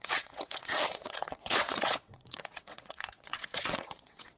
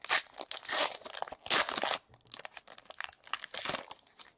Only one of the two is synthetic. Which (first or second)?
first